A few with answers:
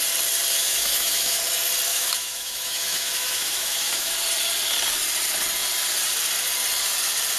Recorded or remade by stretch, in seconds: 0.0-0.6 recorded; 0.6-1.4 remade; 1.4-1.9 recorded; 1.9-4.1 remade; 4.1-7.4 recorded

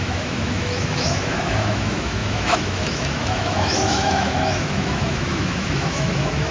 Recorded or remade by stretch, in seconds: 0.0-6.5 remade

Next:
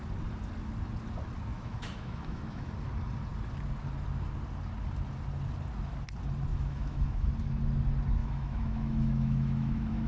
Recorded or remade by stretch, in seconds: 0.0-1.5 recorded; 1.5-2.7 remade; 2.7-6.5 recorded; 6.5-7.3 remade; 7.3-8.2 recorded; 8.2-10.1 remade